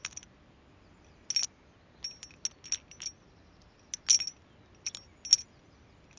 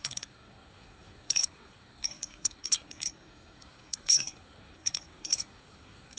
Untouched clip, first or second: first